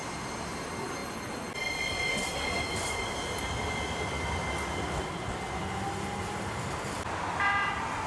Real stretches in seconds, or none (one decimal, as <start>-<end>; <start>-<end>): 0.0-8.1